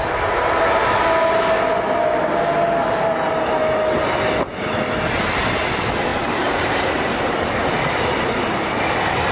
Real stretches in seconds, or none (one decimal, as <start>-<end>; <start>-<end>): 0.0-6.1; 7.5-9.3